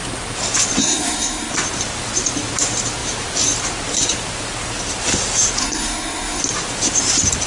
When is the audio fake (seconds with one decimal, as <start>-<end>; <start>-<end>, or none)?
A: 0.8-1.5; 5.6-6.4